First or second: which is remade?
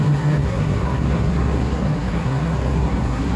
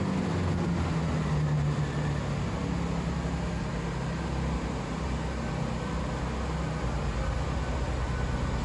first